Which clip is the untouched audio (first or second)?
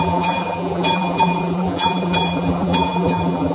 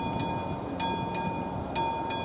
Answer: second